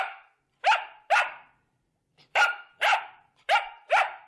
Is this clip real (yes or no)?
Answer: no